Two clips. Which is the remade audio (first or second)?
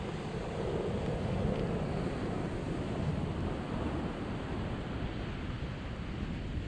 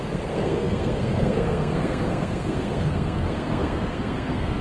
second